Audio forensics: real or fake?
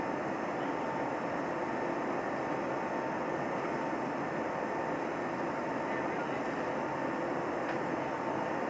real